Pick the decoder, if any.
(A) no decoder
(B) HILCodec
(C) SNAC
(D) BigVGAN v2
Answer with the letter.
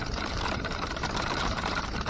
D